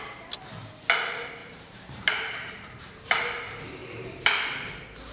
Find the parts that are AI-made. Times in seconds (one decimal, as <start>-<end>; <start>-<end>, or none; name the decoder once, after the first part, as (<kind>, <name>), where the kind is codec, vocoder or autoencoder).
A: 1.4-2.8 (vocoder, BigVGAN v2); 3.8-4.5